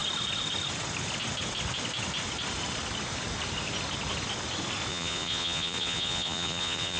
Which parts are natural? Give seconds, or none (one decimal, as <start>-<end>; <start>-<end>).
0.0-4.9